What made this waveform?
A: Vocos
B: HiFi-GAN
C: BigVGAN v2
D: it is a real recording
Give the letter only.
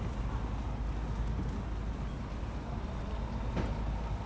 D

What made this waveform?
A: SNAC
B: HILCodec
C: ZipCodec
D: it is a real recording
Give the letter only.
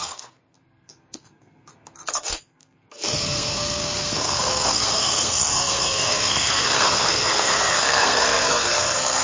A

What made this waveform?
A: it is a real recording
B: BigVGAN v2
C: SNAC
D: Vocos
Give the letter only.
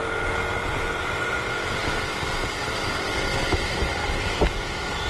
A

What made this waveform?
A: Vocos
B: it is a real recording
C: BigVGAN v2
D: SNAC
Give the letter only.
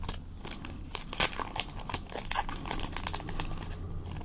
B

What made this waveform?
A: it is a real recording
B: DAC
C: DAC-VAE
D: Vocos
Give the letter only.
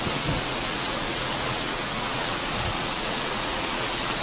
D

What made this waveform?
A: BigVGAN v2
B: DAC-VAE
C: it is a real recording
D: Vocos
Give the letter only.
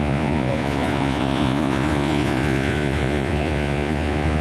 D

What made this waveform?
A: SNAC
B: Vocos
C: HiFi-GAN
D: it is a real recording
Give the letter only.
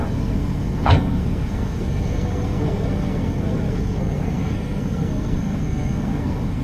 A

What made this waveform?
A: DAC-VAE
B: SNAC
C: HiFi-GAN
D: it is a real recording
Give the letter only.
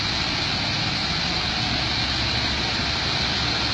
D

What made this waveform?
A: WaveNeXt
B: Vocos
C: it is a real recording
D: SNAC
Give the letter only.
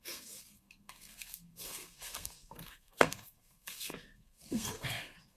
D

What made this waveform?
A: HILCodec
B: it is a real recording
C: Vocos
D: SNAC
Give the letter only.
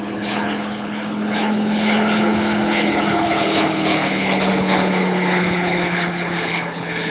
A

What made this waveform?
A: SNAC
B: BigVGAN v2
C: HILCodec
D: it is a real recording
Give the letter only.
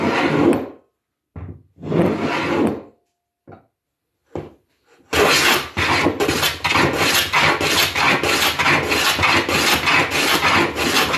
D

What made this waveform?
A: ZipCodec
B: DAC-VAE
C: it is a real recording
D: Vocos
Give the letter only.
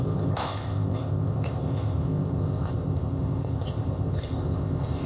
A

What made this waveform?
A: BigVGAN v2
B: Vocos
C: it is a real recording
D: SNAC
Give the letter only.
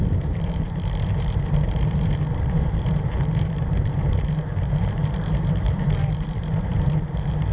A